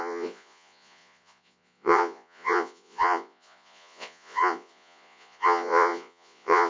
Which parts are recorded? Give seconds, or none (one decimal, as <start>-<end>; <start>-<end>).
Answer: none